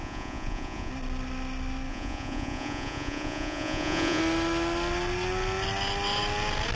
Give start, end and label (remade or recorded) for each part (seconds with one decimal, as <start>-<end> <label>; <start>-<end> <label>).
0.0-0.9 remade; 0.9-1.9 recorded; 1.9-4.2 remade; 4.2-6.8 recorded